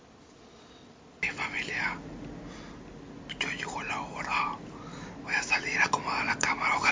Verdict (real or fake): real